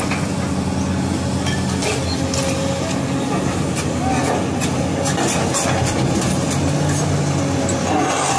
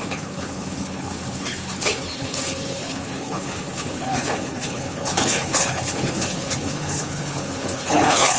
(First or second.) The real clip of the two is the first